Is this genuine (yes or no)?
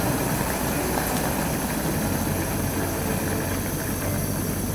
yes